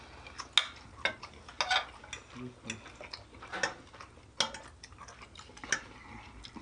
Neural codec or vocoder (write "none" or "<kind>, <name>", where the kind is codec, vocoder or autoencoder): none